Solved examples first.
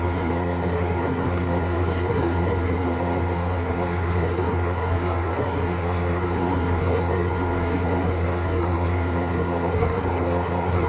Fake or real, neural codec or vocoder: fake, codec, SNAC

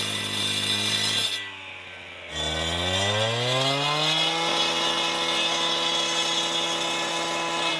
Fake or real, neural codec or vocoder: real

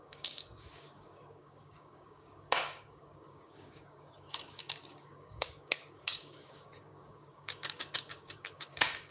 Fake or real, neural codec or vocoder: fake, codec, DAC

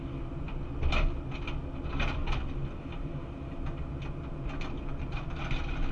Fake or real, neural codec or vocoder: real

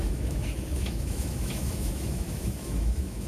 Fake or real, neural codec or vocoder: fake, autoencoder, DAC-VAE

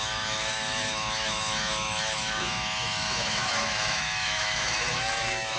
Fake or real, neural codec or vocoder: fake, autoencoder, DAC-VAE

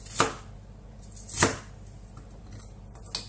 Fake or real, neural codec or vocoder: real